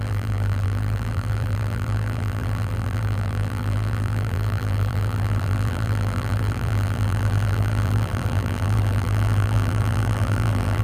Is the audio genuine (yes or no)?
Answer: no